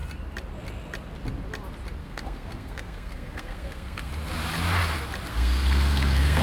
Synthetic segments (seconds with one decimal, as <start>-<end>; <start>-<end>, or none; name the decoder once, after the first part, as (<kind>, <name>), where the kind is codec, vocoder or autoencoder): 2.0-4.1 (codec, SNAC); 5.3-6.4